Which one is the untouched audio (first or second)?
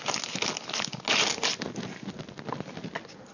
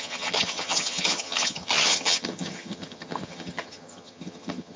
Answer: first